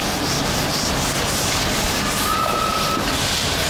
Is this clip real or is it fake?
real